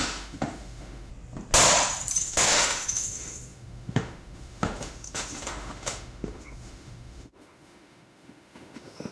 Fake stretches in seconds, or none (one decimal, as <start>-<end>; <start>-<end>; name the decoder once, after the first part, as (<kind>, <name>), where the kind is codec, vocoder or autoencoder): 0.0-1.1 (autoencoder, DAC-VAE); 2.2-9.1